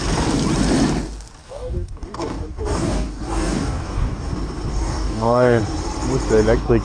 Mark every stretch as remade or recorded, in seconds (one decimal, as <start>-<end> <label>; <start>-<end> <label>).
0.0-1.4 recorded; 1.4-4.3 remade; 4.3-4.7 recorded; 4.7-5.6 remade; 5.6-6.8 recorded